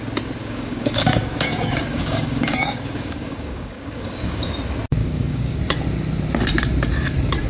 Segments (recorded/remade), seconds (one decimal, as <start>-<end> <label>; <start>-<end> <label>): 0.0-0.4 recorded; 0.4-4.5 remade; 4.5-5.0 recorded; 5.0-5.6 remade; 5.6-7.5 recorded